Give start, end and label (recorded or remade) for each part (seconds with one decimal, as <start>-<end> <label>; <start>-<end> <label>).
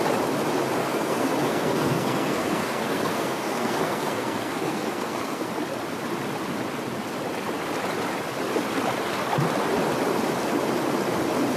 0.0-0.8 recorded; 0.8-5.5 remade; 5.5-11.6 recorded